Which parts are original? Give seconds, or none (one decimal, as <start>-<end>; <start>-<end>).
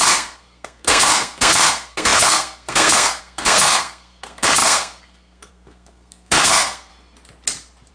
6.9-7.9